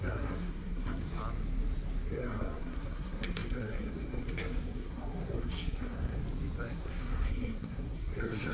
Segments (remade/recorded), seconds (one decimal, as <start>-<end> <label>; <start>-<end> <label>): 0.0-1.2 remade; 1.2-2.1 recorded; 2.1-6.2 remade; 6.2-6.7 recorded; 6.7-8.5 remade